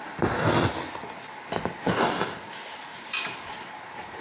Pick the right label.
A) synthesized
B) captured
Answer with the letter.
B